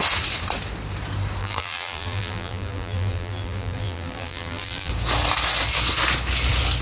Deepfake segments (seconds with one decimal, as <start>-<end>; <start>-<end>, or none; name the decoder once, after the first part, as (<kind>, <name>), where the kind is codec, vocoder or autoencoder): 1.4-4.9 (vocoder, BigVGAN v2)